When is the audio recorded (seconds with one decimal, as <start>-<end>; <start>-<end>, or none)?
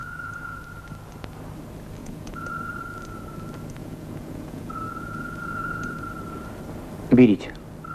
0.6-2.0; 2.5-3.8; 6.0-7.9